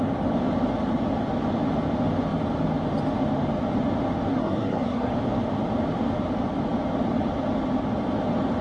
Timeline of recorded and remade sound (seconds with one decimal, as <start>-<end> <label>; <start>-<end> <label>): 0.0-4.3 recorded; 4.3-5.1 remade; 5.1-8.6 recorded